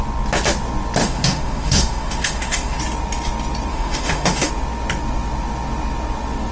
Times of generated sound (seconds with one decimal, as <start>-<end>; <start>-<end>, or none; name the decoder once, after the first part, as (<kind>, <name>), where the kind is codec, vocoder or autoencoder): 1.0-2.8 (autoencoder, DAC-VAE); 3.7-4.5